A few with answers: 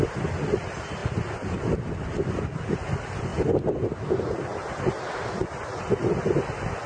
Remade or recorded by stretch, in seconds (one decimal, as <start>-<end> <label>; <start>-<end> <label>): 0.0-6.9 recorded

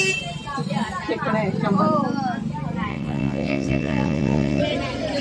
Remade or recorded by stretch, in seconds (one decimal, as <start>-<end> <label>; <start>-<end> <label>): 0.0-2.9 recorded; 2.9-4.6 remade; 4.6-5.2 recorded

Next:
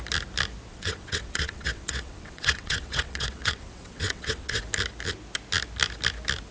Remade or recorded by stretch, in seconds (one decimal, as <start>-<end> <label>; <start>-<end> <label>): 0.0-0.7 recorded; 0.7-4.6 remade; 4.6-6.5 recorded

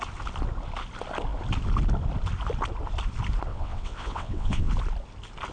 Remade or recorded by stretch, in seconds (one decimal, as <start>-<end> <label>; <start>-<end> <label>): 0.0-3.5 recorded; 3.5-4.7 remade; 4.7-5.5 recorded

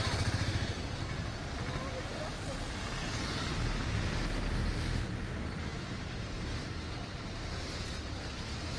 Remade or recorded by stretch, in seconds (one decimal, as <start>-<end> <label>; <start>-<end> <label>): 0.0-8.8 recorded